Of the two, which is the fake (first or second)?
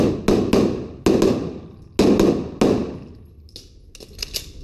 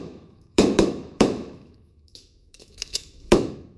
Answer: second